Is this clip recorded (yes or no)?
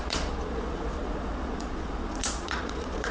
no